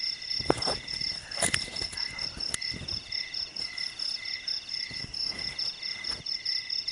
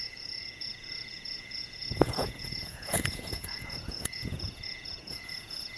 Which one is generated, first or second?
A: second